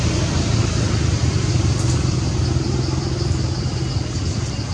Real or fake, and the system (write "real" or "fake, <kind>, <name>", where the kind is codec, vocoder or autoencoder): real